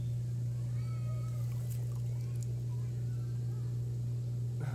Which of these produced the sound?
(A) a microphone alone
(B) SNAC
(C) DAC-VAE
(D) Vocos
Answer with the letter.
A